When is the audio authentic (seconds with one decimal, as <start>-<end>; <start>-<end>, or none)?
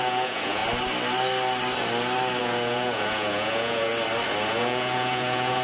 0.6-2.4; 3.9-4.5